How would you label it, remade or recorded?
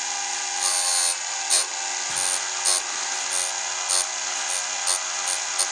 recorded